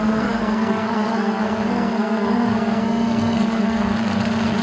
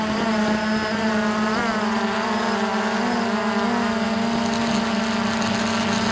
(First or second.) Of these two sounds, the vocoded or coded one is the first